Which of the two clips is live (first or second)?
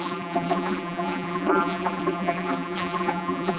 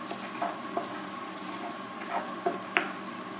second